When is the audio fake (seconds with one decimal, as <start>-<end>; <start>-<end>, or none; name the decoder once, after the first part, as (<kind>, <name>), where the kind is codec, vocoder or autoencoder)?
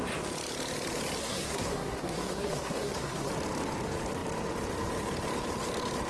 1.2-3.3 (codec, SNAC)